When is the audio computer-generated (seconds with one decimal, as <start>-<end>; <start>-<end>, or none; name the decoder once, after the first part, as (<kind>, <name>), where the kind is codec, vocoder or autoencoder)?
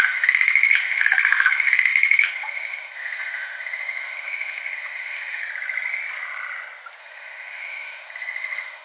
0.0-5.4 (autoencoder, DAC-VAE); 7.0-8.8